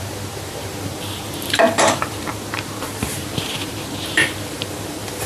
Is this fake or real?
fake